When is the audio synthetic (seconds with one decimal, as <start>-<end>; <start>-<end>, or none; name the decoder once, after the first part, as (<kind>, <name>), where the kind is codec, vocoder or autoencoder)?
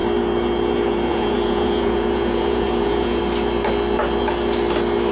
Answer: 1.1-3.2 (vocoder, Vocos)